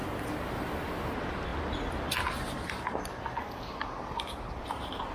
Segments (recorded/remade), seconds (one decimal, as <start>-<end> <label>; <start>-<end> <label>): 0.0-0.6 recorded; 0.6-1.5 remade; 1.5-4.6 recorded; 4.6-5.1 remade